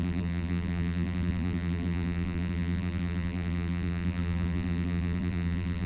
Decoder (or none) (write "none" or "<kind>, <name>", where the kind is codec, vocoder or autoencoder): vocoder, BigVGAN v2